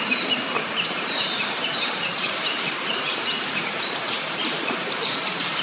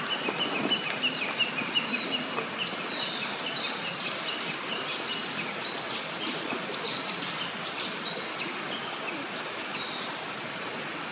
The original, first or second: second